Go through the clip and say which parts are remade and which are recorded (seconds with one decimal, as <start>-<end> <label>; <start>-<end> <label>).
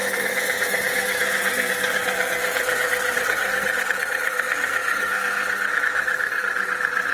0.0-7.1 remade